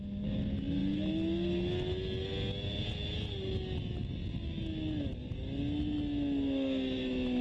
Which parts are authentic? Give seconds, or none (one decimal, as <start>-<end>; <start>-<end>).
0.0-7.4

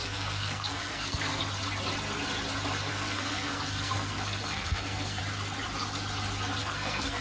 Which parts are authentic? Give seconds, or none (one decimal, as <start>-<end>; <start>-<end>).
1.4-2.9; 5.2-6.6